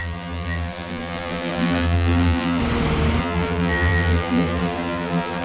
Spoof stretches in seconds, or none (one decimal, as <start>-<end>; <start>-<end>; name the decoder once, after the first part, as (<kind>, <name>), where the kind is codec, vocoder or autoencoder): 0.0-2.6 (vocoder, BigVGAN v2); 3.2-5.4